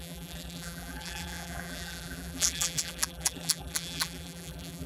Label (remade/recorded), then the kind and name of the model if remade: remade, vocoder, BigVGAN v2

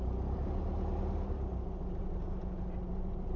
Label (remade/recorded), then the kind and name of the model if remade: recorded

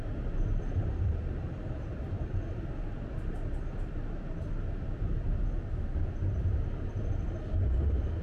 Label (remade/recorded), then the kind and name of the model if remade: recorded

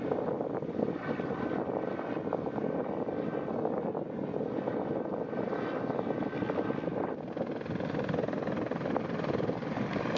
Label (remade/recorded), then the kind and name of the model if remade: recorded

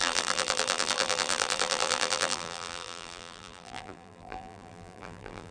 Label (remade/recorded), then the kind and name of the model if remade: remade, vocoder, BigVGAN v2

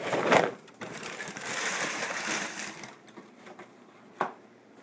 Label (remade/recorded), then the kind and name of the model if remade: remade, vocoder, BigVGAN v2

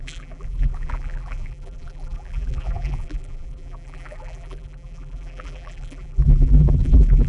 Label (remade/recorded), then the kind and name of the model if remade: remade, vocoder, BigVGAN v2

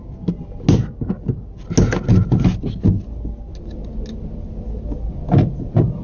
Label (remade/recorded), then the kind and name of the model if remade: recorded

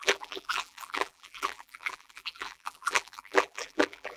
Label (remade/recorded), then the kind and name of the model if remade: remade, vocoder, BigVGAN v2